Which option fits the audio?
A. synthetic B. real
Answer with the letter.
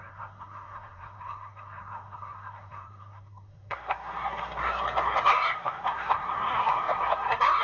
A